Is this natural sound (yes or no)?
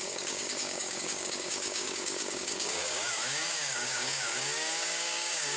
no